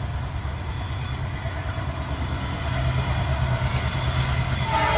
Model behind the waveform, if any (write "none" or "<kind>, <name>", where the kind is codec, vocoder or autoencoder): none